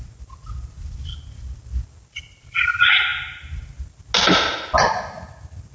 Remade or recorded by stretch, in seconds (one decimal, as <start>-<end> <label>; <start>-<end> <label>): 0.0-5.7 recorded